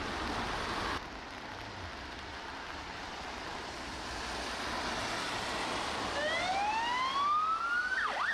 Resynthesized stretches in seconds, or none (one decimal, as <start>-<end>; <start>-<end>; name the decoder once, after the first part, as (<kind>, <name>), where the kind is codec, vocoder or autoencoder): none